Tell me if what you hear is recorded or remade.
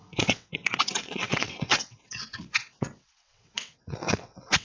remade